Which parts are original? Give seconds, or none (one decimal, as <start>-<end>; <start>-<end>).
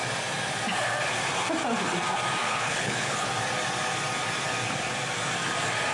0.0-2.4; 3.3-5.9